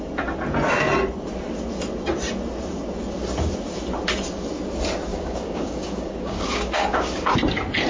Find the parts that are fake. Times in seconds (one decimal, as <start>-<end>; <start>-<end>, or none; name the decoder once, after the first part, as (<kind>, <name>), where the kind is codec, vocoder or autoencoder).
5.1-7.3 (codec, DAC)